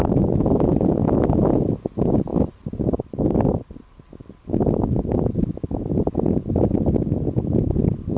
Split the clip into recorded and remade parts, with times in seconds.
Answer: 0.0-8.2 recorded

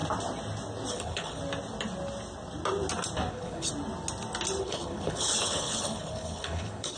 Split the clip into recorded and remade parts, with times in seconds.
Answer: 0.0-0.9 recorded; 0.9-1.4 remade; 1.4-3.3 recorded; 3.3-3.7 remade; 3.7-4.6 recorded; 4.6-7.0 remade